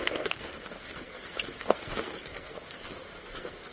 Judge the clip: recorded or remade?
remade